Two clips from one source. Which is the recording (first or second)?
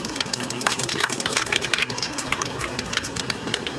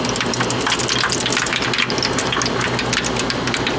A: second